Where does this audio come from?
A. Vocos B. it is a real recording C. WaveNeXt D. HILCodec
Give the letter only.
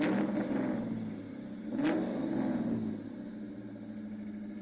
B